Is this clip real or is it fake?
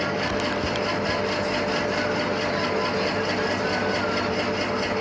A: real